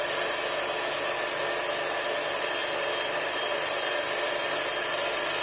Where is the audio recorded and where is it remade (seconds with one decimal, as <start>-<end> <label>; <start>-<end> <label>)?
0.0-2.6 recorded; 2.6-5.4 remade